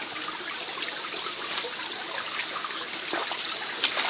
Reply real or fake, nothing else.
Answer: real